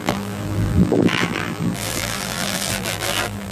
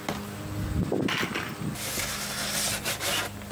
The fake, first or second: first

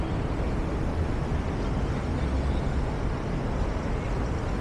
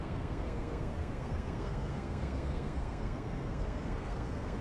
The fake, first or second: second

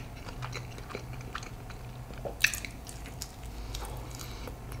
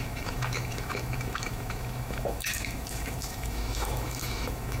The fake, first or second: second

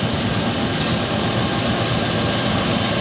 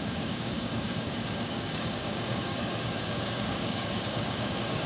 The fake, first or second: second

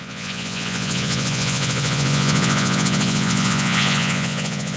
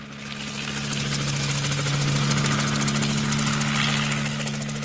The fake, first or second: first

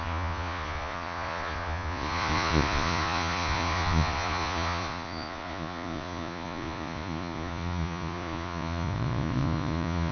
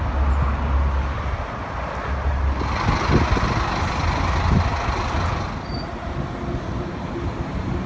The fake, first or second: first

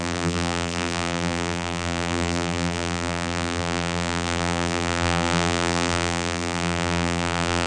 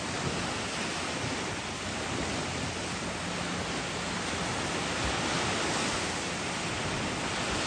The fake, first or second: first